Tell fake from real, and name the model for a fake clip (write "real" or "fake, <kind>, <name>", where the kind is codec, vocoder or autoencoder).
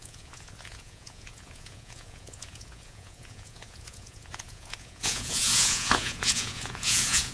fake, vocoder, Vocos